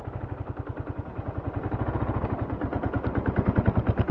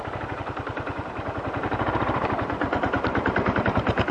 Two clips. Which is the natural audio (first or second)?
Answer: first